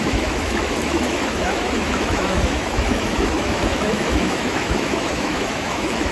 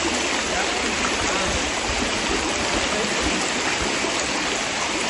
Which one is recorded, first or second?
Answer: second